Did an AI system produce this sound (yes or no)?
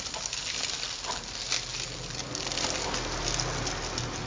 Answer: no